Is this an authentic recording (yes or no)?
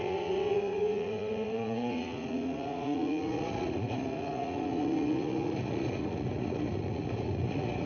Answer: no